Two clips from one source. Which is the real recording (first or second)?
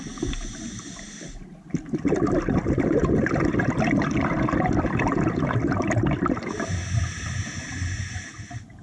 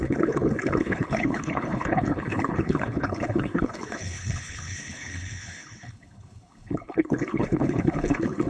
first